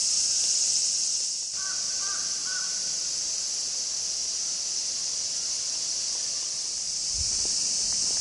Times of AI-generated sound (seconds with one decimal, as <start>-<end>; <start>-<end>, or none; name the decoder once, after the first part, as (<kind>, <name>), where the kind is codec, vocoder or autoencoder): 0.0-1.9 (vocoder, BigVGAN v2); 7.0-8.2